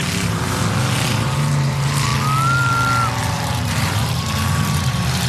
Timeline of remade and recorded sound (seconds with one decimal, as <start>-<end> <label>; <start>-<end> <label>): 0.0-0.6 remade; 0.6-1.1 recorded; 1.1-2.1 remade; 2.1-3.2 recorded; 3.2-5.3 remade